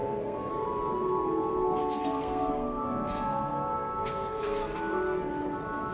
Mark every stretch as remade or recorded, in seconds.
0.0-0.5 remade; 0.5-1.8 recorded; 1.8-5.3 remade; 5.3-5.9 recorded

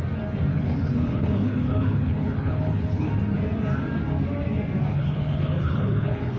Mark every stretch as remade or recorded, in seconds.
0.0-0.5 recorded; 0.5-3.1 remade; 3.1-4.9 recorded; 4.9-6.4 remade

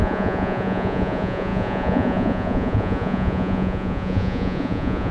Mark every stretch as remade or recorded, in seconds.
0.0-5.1 remade